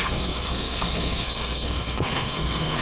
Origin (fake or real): fake